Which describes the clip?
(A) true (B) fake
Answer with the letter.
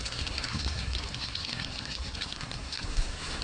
B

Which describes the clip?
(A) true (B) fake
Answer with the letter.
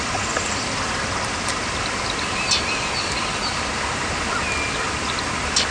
A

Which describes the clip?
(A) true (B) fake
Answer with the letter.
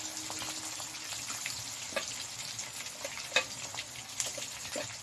A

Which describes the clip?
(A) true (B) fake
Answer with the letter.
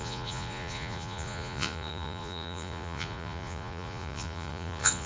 B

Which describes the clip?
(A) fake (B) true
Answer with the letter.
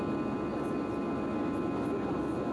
B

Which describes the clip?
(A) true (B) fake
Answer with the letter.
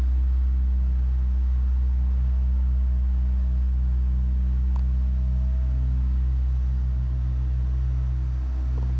A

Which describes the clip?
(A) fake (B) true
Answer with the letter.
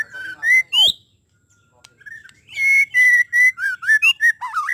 B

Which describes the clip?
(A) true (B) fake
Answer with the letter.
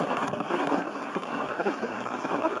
B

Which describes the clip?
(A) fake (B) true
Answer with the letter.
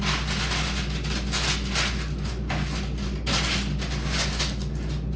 B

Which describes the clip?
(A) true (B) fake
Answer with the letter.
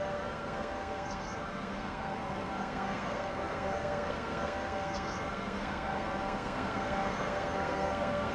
B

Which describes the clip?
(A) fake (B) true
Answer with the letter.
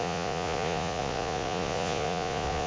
A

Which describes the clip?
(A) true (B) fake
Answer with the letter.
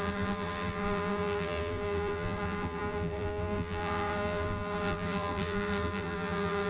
B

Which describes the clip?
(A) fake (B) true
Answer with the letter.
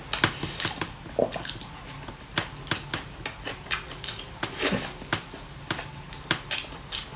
B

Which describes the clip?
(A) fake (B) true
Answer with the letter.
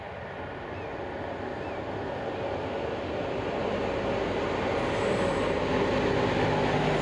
B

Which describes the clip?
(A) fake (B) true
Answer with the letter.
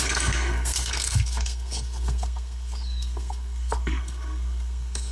A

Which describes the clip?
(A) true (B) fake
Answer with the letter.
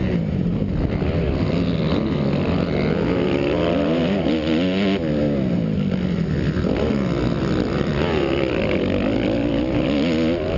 A